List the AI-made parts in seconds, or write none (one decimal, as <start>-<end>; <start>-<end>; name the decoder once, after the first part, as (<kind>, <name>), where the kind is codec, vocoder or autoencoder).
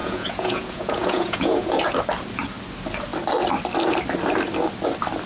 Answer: 0.0-1.8 (vocoder, Vocos)